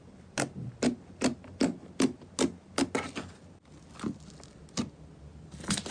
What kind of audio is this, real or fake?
real